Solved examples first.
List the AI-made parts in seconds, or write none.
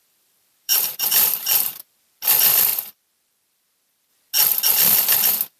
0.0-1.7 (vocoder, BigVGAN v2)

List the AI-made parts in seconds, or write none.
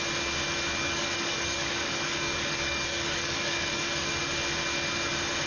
0.8-4.1 (codec, DAC)